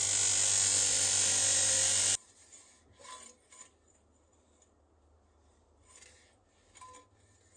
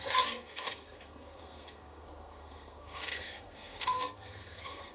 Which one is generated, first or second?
second